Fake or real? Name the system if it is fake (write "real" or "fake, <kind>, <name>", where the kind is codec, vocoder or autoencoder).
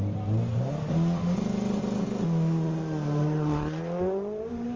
real